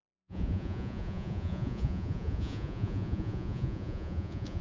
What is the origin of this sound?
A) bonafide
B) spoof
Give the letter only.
B